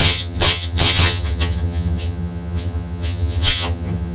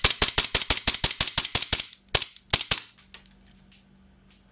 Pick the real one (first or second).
second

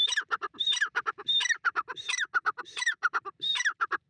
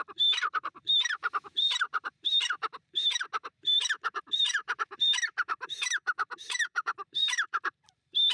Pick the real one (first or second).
first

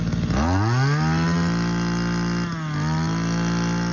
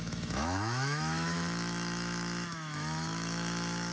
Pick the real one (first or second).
first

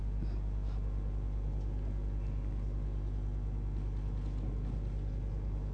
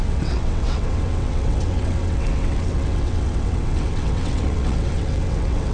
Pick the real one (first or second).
first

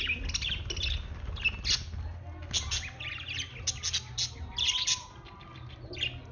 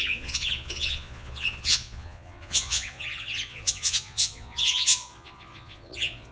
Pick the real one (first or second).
first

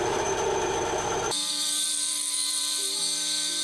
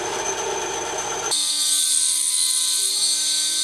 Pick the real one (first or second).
second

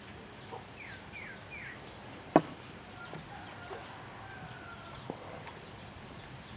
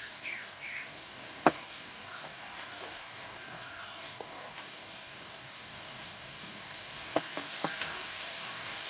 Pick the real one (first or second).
first